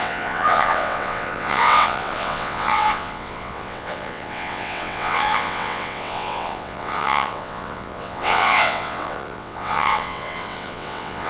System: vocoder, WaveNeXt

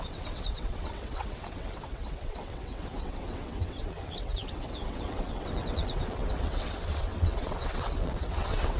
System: vocoder, WaveNeXt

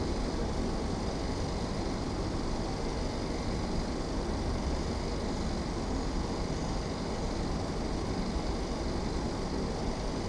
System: none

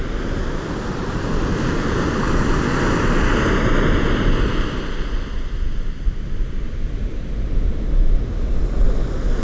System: none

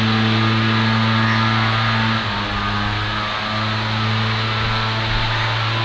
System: none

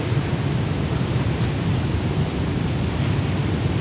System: none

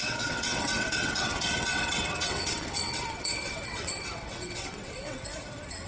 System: vocoder, WaveNeXt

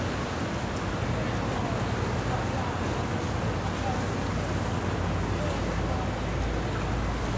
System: none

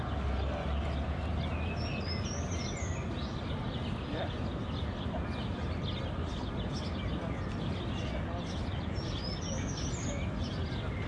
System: none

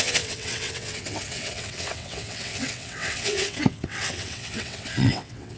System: vocoder, WaveNeXt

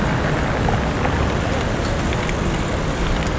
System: none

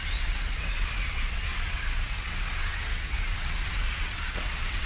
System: vocoder, WaveNeXt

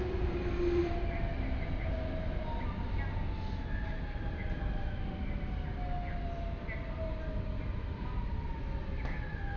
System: none